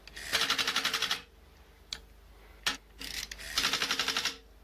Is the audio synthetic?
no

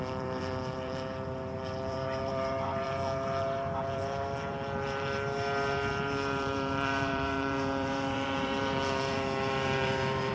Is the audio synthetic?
yes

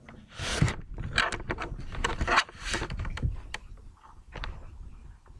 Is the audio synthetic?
yes